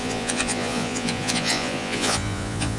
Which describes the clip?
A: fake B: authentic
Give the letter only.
A